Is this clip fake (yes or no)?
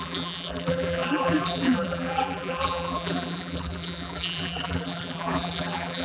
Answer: yes